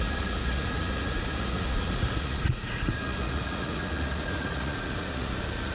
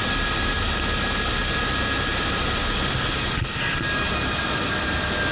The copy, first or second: first